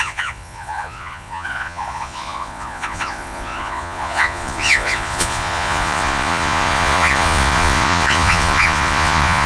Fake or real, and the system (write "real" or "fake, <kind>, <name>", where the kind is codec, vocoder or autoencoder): fake, vocoder, Vocos